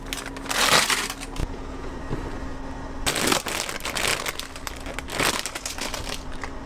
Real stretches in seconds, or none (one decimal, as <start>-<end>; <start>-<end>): 0.0-1.4; 1.9-6.7